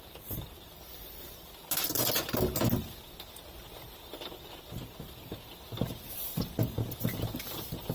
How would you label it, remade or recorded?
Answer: recorded